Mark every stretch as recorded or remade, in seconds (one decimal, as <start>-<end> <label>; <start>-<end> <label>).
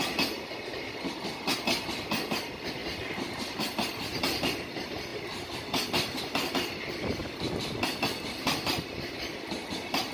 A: 0.0-10.1 recorded